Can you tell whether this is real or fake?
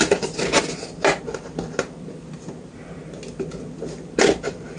real